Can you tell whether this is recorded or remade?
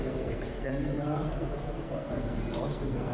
remade